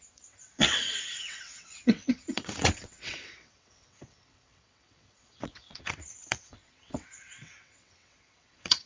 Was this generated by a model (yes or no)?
yes